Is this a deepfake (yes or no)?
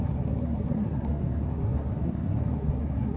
yes